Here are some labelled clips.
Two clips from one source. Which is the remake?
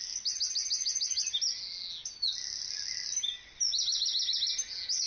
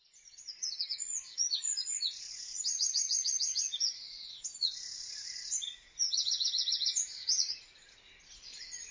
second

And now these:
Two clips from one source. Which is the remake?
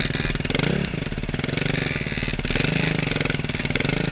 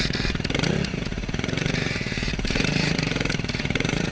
second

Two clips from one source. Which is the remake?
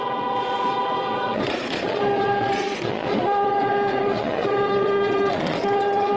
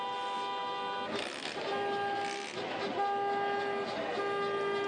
first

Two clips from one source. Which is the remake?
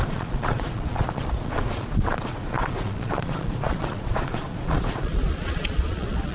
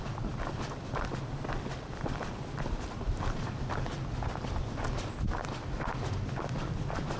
first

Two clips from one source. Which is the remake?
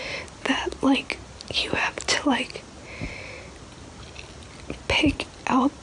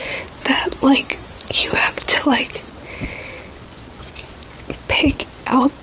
second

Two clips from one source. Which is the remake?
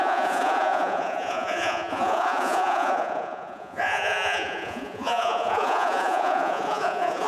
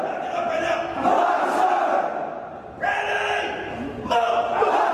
first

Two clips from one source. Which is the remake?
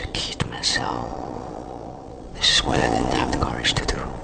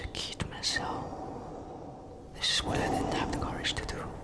first